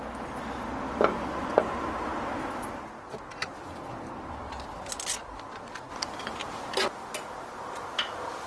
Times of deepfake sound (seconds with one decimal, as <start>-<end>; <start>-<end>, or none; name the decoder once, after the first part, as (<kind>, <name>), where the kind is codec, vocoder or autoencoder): none